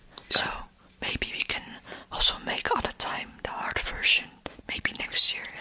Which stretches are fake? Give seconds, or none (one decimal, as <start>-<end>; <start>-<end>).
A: 3.4-5.6